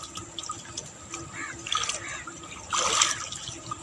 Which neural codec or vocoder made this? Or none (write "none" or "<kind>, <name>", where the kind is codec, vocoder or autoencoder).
none